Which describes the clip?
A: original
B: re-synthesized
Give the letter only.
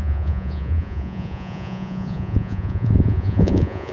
B